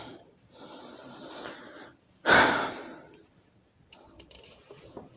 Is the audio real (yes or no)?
yes